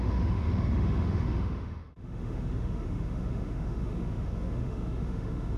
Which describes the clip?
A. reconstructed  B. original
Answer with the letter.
A